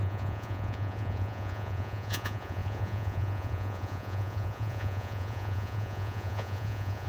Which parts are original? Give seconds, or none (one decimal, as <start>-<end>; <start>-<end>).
none